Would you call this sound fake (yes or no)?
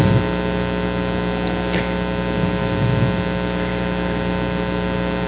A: no